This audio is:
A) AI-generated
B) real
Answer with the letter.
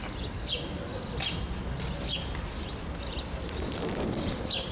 B